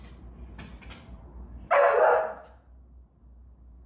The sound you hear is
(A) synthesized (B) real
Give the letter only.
B